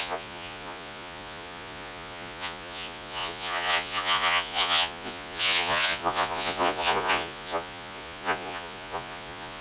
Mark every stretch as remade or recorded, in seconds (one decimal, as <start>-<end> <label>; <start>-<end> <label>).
0.0-9.6 remade